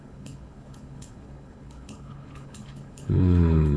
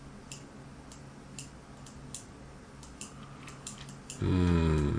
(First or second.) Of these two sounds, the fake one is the first